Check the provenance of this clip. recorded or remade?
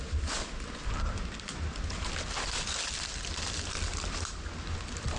recorded